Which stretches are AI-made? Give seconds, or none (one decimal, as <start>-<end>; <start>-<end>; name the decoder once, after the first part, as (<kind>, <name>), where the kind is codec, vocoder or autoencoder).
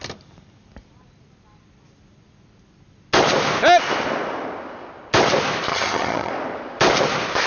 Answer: 5.7-6.3 (vocoder, HiFi-GAN)